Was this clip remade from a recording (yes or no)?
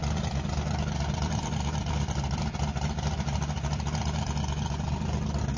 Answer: yes